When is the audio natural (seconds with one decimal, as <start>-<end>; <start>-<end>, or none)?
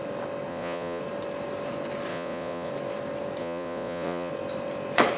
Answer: 0.0-0.5; 1.0-2.1; 2.7-3.4; 4.3-5.2